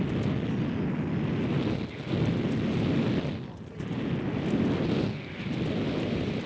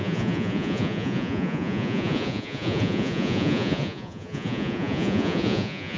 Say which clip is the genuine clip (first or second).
first